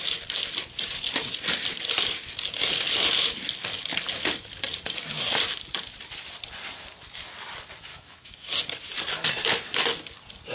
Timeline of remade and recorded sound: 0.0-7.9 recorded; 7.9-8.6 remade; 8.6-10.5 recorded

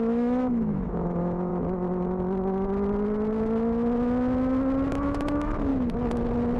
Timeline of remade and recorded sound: 0.0-1.5 remade; 1.5-4.9 recorded; 4.9-5.7 remade; 5.7-6.6 recorded

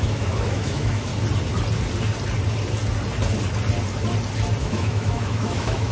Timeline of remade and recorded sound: 0.0-1.1 remade; 1.1-4.6 recorded; 4.6-5.9 remade